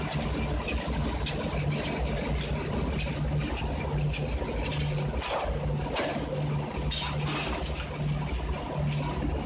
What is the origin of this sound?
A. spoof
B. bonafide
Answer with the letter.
B